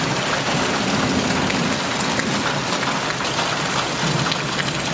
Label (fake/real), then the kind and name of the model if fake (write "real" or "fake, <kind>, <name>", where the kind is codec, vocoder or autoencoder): real